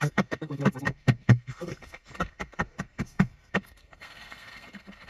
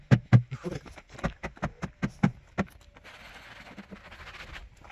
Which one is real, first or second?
second